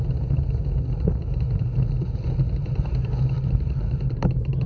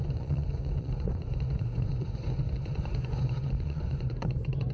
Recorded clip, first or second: first